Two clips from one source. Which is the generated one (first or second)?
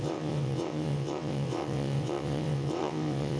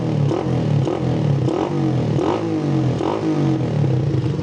first